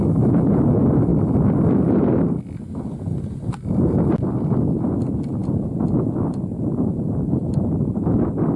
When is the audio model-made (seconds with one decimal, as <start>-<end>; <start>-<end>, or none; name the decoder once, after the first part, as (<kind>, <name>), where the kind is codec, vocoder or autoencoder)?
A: none